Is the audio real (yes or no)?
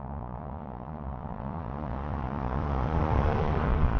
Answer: no